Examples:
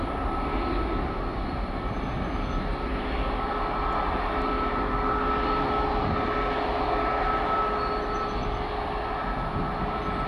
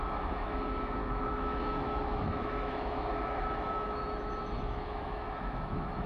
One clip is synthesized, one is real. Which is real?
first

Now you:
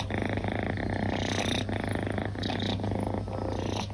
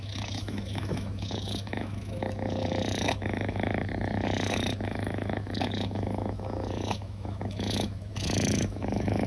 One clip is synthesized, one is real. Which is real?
first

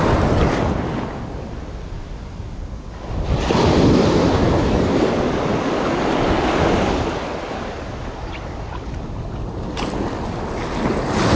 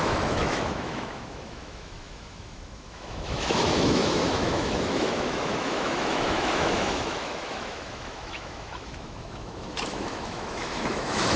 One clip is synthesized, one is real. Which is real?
first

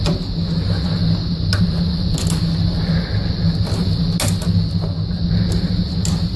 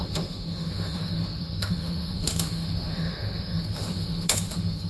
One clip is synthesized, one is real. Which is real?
first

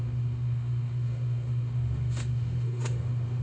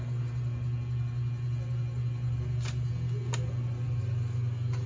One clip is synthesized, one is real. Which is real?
second